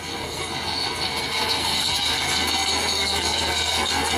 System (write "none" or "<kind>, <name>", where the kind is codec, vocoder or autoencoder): codec, SNAC